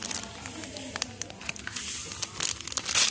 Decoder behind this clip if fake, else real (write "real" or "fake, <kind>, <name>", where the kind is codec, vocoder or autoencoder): real